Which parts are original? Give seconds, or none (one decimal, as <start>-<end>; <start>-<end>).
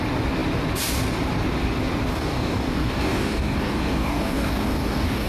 0.0-2.1